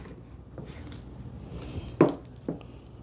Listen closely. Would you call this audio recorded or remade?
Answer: recorded